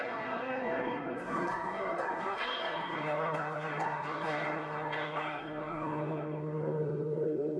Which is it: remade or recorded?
remade